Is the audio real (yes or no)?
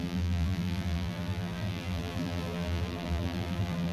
no